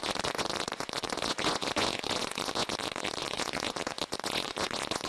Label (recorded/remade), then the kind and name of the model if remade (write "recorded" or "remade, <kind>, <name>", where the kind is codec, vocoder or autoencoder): remade, vocoder, Vocos